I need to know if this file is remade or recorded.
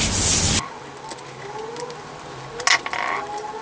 recorded